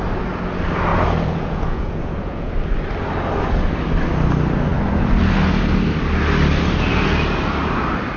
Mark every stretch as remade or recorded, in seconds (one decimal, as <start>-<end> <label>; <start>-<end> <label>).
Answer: 0.0-0.9 recorded; 0.9-2.5 remade; 2.5-8.2 recorded